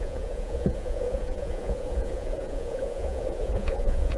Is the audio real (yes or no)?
no